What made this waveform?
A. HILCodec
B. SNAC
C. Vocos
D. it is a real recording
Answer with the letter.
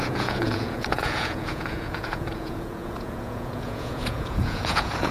C